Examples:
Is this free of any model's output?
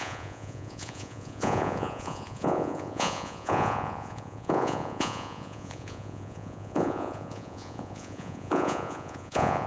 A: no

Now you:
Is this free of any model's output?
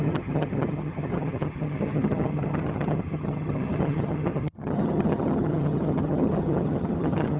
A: no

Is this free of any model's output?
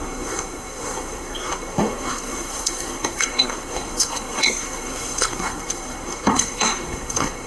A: no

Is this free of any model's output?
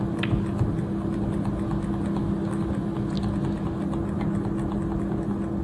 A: yes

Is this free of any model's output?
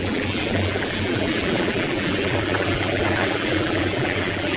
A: no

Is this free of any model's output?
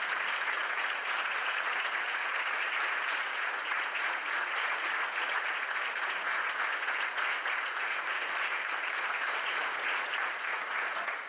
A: no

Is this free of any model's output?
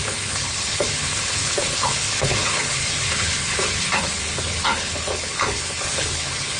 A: no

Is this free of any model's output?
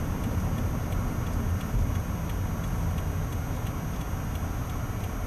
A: yes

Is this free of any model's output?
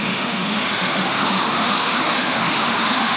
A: no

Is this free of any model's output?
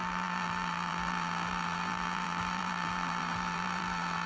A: no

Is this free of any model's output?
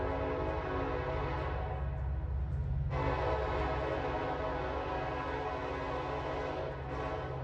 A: yes